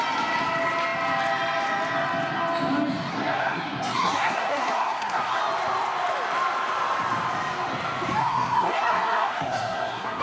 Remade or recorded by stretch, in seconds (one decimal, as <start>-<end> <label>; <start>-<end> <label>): 0.0-3.1 recorded; 3.1-5.4 remade; 5.4-8.2 recorded; 8.2-10.2 remade